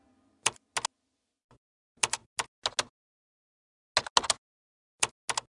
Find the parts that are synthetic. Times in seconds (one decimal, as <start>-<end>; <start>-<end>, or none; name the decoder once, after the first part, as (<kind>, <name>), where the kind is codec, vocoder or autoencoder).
none